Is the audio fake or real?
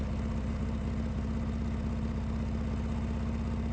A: real